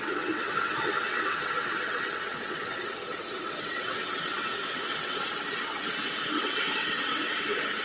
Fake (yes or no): yes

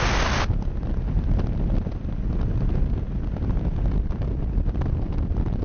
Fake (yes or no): no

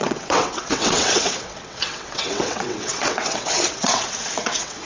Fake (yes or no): yes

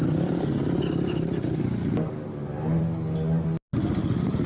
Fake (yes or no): no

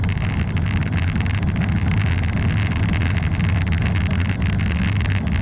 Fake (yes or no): no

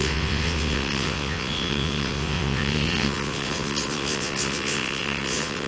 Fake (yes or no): yes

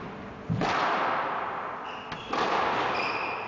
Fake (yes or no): no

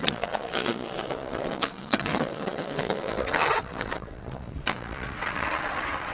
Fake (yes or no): yes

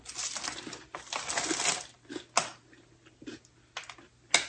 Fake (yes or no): no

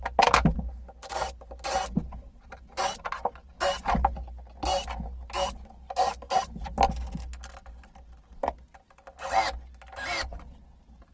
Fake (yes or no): no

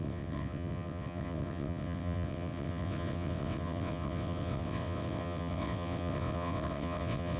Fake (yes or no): yes